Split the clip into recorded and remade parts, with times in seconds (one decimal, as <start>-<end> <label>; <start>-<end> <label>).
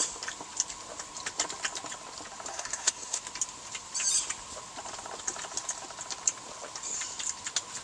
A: 0.0-2.5 recorded; 2.5-3.2 remade; 3.2-7.8 recorded